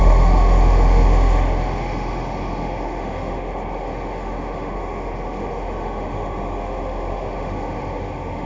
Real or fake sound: fake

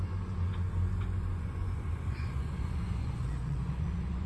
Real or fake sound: fake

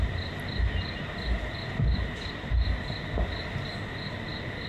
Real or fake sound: real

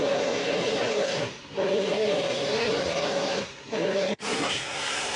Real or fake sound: fake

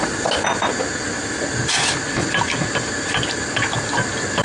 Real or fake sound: real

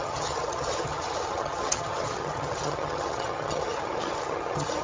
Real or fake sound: fake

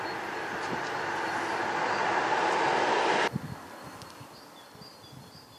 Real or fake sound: real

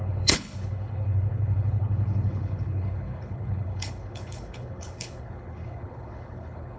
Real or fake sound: fake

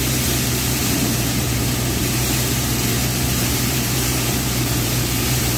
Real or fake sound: fake